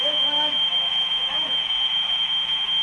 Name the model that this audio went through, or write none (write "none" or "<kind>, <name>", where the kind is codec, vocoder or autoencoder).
autoencoder, DAC-VAE